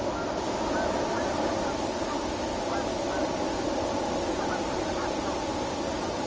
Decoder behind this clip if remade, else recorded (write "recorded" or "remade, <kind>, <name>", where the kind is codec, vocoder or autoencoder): recorded